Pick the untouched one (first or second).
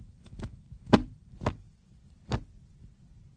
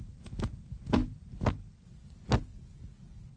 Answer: second